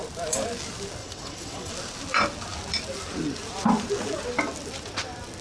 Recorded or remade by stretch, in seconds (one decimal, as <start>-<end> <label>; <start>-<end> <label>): 0.0-1.0 recorded; 1.0-1.7 remade; 1.7-5.4 recorded